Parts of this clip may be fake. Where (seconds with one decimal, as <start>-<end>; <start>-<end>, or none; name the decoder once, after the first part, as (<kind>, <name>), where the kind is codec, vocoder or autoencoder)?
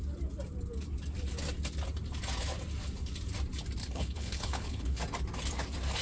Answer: 3.8-5.0 (codec, HILCodec)